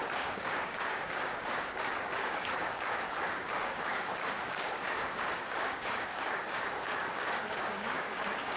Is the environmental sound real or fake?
fake